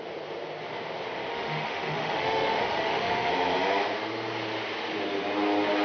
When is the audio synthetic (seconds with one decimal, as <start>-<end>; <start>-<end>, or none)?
1.3-3.3